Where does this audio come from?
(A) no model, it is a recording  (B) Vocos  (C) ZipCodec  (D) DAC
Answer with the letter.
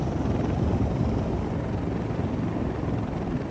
A